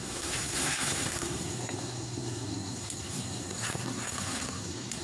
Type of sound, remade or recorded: remade